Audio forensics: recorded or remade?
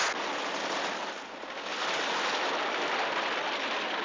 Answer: recorded